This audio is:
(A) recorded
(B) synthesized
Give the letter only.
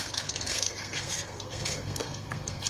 B